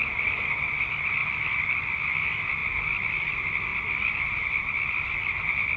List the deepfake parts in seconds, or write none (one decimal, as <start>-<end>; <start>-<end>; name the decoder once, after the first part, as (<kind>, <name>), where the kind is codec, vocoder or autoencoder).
none